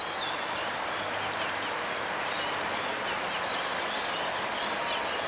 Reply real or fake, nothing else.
real